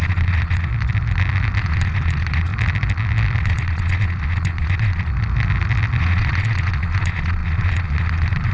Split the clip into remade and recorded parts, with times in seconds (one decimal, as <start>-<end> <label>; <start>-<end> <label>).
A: 0.0-0.7 remade; 0.7-1.6 recorded; 1.6-2.5 remade; 2.5-3.4 recorded; 3.4-5.1 remade; 5.1-6.0 recorded; 6.0-8.5 remade